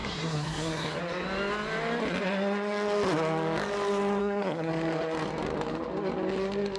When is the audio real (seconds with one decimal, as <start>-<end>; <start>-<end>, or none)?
1.0-4.2; 4.7-6.8